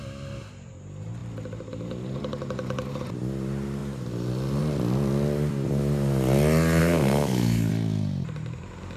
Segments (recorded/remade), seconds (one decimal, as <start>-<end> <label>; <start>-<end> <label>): 0.0-6.8 recorded; 6.8-7.7 remade; 7.7-9.0 recorded